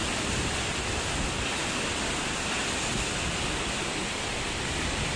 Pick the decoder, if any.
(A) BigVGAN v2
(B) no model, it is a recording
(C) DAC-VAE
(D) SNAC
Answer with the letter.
B